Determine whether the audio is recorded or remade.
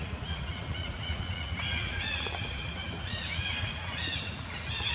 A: remade